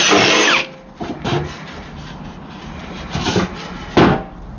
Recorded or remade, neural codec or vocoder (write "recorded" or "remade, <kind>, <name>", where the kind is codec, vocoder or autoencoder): recorded